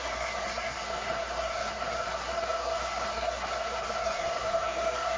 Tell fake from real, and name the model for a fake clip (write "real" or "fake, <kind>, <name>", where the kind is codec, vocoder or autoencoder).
fake, codec, SNAC